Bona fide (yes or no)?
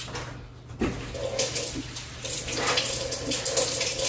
yes